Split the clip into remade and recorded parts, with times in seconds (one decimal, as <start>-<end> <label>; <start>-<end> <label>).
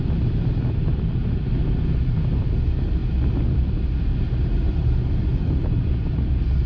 0.0-5.3 recorded; 5.3-5.9 remade; 5.9-6.7 recorded